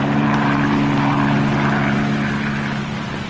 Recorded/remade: remade